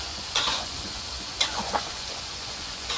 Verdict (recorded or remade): remade